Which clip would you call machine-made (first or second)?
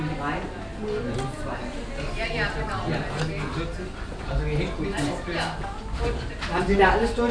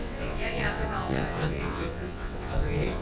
second